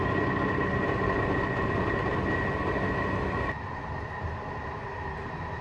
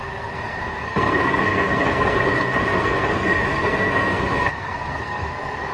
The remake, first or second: second